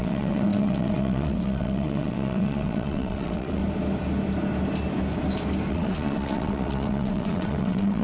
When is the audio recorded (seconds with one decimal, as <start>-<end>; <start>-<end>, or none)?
3.6-5.7